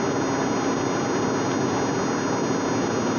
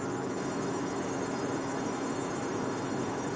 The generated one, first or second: second